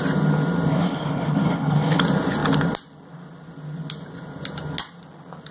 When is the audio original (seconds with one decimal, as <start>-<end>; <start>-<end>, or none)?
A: 0.0-0.7; 2.0-5.5